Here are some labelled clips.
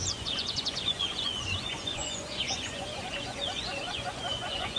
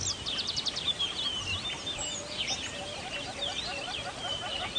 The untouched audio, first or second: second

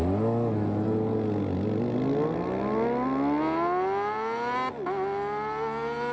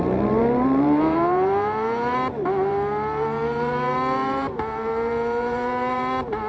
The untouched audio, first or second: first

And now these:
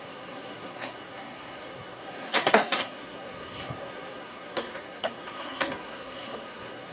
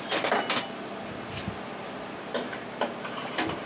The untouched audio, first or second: second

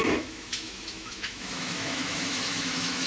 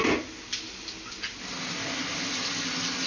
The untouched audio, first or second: second